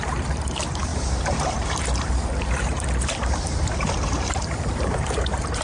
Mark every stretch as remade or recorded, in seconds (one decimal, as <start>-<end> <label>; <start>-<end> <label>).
0.0-5.6 remade